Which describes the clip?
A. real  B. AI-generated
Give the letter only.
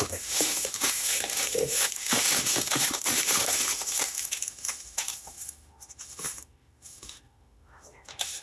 B